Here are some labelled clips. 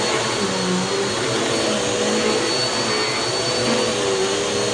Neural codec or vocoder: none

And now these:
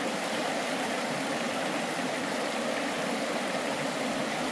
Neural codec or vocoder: none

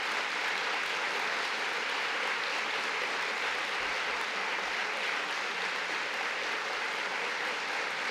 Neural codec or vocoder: none